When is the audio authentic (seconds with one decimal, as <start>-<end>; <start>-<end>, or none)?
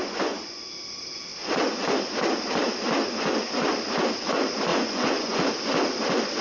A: 0.6-4.7; 5.5-6.4